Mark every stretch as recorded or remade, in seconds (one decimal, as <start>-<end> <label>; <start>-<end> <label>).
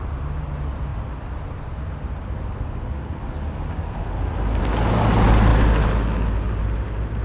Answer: 0.0-7.2 recorded